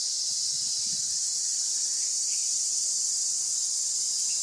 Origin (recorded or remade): remade